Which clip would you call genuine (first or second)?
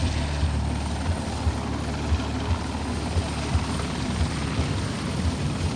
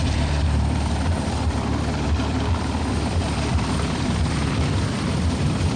first